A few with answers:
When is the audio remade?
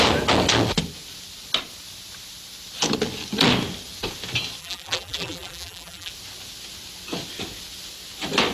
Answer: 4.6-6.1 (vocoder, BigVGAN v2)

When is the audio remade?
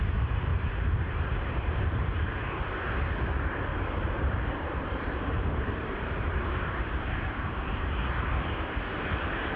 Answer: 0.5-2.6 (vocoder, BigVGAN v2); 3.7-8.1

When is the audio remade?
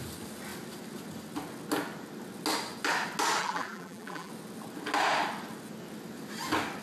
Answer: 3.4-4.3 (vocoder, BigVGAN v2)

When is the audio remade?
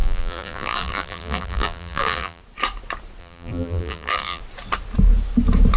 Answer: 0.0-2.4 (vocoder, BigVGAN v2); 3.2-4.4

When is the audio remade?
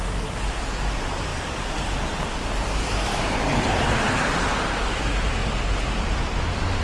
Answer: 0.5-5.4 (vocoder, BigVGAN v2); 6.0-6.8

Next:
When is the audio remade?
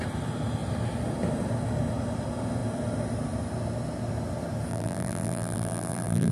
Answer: 4.7-6.3 (vocoder, BigVGAN v2)